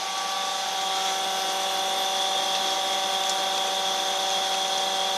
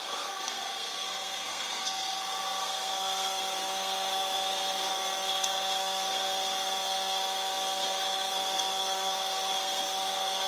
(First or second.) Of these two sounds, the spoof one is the second